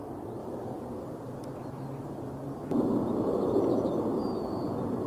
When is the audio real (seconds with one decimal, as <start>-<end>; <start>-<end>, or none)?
0.0-5.1